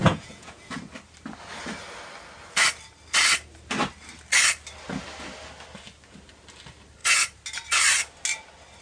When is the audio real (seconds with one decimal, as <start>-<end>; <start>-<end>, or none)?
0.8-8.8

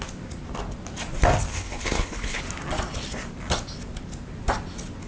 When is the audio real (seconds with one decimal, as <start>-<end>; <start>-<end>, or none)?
0.0-1.5; 2.4-5.1

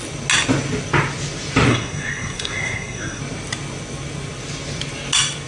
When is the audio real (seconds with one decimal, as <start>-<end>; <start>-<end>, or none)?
0.0-1.7; 3.2-5.5